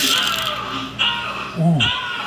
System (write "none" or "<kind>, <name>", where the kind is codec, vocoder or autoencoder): none